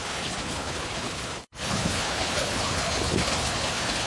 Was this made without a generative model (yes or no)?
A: no